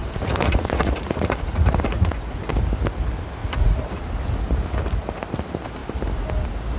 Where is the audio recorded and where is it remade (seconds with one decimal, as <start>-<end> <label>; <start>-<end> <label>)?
0.0-2.5 remade; 2.5-3.4 recorded; 3.4-4.0 remade; 4.0-6.8 recorded